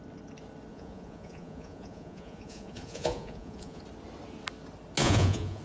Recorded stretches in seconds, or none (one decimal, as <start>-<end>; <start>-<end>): 0.0-0.7; 3.8-5.0